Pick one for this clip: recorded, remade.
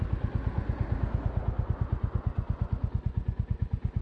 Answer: recorded